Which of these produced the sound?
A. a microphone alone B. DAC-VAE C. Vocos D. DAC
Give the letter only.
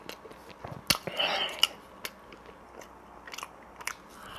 A